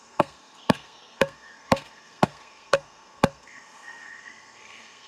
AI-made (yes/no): yes